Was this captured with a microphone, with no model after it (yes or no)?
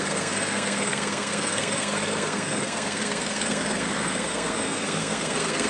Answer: no